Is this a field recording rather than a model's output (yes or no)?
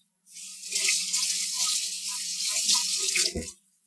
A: no